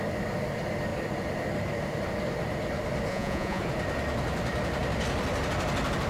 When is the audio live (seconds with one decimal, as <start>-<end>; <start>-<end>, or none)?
0.0-3.1; 3.6-6.1